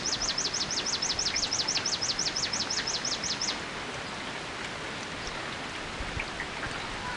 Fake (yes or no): no